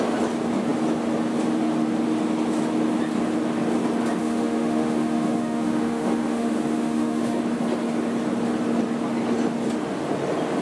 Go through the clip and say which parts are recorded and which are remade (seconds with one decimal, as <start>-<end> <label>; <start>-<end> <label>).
0.0-4.2 recorded; 4.2-7.4 remade; 7.4-10.6 recorded

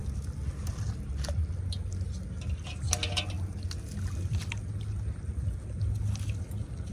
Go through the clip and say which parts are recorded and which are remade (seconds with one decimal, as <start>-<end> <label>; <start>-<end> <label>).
0.0-6.9 recorded

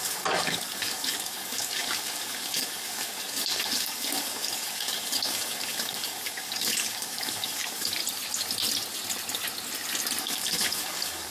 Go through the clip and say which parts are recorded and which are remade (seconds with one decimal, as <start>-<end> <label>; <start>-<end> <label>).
0.0-8.0 remade; 8.0-10.2 recorded; 10.2-11.3 remade

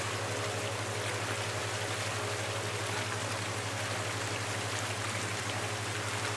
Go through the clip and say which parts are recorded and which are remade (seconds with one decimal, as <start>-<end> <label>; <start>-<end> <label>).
0.0-6.4 recorded

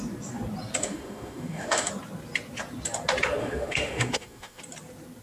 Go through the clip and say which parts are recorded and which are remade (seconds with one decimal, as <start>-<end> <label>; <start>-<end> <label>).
0.0-0.8 recorded; 0.8-1.9 remade; 1.9-3.4 recorded; 3.4-4.6 remade; 4.6-5.2 recorded